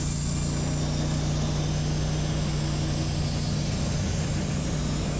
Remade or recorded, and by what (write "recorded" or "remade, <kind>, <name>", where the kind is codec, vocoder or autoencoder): recorded